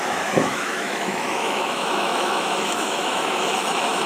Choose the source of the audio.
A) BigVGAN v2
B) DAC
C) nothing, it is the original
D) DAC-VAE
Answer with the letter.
D